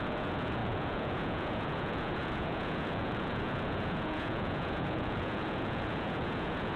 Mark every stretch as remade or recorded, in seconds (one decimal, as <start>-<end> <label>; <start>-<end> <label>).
0.0-6.8 remade